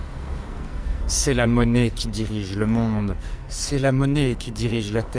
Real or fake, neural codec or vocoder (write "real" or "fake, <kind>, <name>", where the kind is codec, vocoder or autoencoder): fake, codec, SNAC